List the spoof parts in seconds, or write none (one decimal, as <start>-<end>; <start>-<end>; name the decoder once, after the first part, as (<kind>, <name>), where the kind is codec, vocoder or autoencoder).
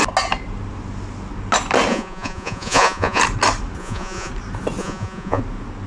1.9-3.2 (vocoder, Vocos); 3.8-4.3; 4.8-5.4